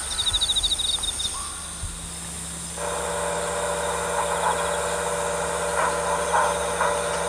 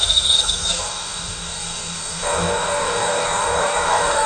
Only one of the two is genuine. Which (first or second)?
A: first